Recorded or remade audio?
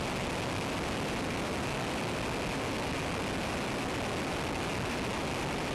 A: recorded